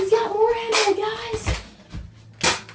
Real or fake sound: real